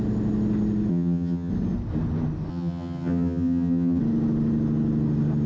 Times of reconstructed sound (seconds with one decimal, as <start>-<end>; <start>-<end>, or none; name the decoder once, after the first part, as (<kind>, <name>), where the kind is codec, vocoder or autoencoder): 0.9-1.5 (vocoder, HiFi-GAN); 2.5-4.0